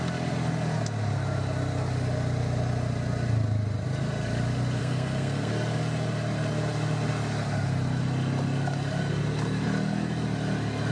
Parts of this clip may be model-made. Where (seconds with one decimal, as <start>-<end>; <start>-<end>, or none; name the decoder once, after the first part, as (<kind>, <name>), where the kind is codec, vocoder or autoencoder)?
4.8-5.5 (codec, SNAC)